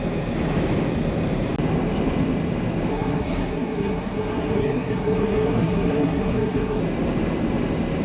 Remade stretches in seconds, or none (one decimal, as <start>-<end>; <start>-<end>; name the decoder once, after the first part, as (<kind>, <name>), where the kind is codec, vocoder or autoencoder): 2.9-6.8 (codec, SNAC)